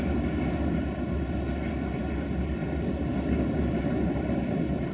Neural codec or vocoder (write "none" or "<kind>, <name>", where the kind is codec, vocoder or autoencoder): none